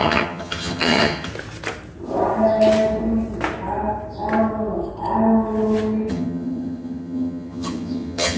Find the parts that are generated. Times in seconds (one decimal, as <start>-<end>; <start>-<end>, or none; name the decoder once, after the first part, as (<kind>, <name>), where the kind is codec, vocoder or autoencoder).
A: 0.0-1.3 (vocoder, HiFi-GAN); 6.1-8.4